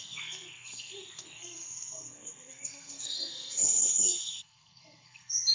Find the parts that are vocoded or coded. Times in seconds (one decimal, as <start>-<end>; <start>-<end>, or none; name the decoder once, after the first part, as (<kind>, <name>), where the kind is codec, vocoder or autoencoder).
0.0-5.5 (codec, SNAC)